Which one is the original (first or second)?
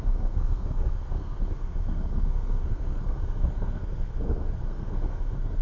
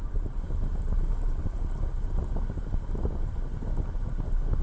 second